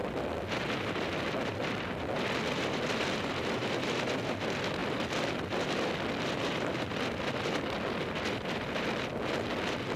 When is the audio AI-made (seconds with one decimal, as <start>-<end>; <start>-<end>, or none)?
0.0-10.0